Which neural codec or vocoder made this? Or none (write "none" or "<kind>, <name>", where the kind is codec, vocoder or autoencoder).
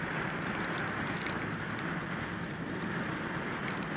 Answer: none